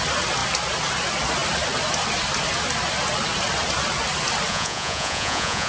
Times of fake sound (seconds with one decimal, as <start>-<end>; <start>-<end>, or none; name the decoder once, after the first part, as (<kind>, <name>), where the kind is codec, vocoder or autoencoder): 4.5-5.7 (vocoder, Vocos)